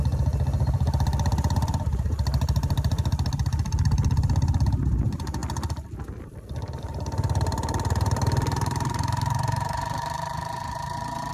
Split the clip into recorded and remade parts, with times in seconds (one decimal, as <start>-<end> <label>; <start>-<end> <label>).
0.0-5.4 remade; 5.4-6.8 recorded; 6.8-11.3 remade